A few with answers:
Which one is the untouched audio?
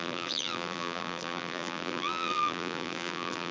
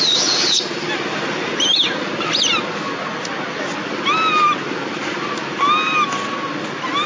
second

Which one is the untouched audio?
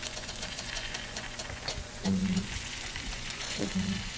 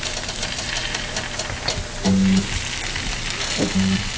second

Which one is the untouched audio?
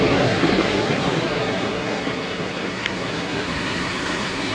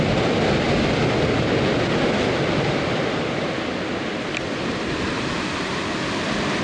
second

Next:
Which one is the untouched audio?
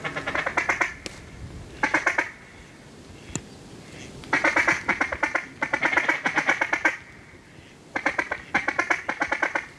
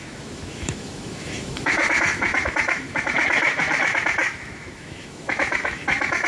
first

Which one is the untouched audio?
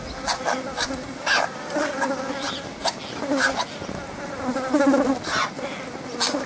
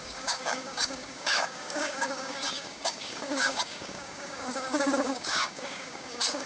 first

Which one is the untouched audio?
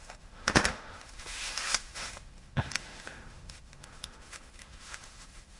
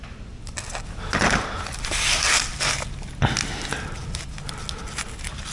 second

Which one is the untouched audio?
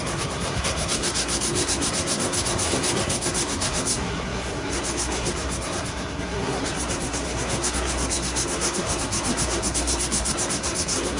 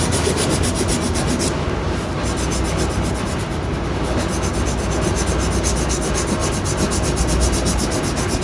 second